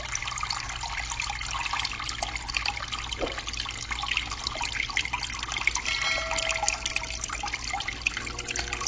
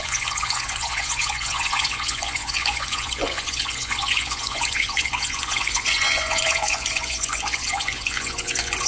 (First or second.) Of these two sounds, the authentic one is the first